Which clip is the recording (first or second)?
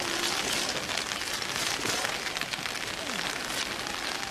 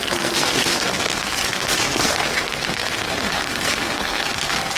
first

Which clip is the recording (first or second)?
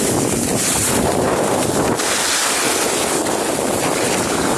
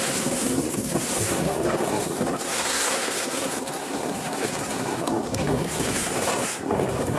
first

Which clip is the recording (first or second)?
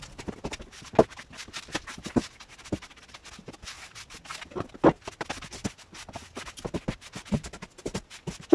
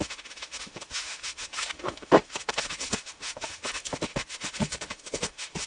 first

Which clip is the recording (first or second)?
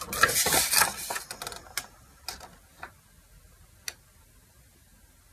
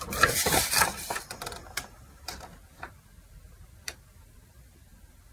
first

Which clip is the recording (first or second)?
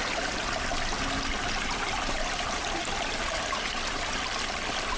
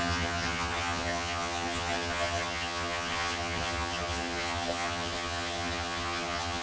first